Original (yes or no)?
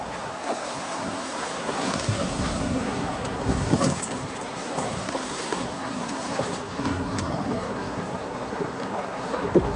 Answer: no